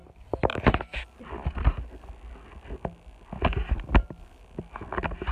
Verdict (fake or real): real